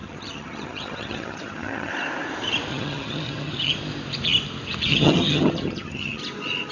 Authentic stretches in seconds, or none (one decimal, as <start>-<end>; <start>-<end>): 1.9-2.7; 3.7-4.9; 6.2-6.7